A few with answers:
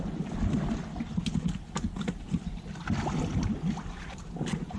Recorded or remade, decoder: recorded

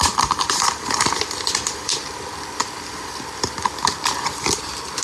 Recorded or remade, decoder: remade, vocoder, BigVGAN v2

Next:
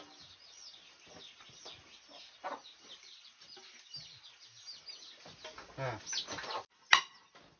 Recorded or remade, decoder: recorded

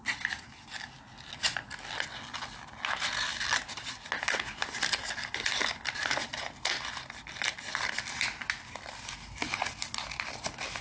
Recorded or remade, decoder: recorded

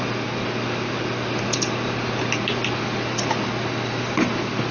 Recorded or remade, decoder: recorded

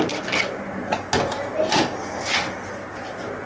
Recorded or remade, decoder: recorded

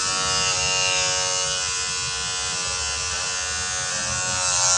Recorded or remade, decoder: recorded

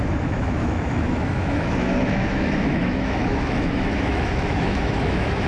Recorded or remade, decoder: remade, autoencoder, DAC-VAE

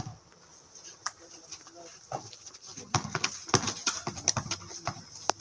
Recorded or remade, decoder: recorded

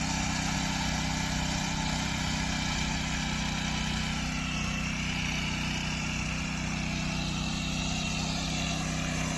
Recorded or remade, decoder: recorded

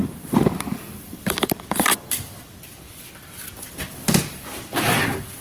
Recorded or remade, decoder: remade, vocoder, BigVGAN v2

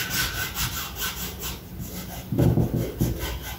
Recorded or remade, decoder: recorded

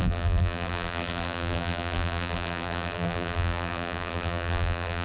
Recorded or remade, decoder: remade, vocoder, BigVGAN v2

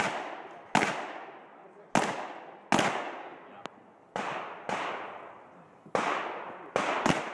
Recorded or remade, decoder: recorded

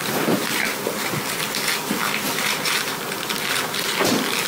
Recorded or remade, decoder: recorded